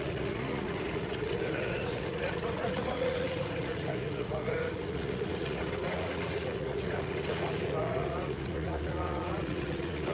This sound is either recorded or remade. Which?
remade